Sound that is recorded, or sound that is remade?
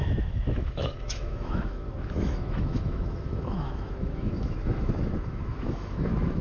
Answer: remade